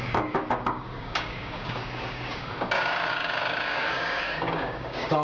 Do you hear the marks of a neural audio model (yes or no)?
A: yes